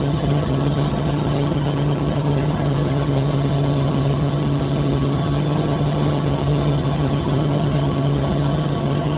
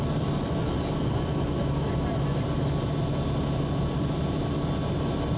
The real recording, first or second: second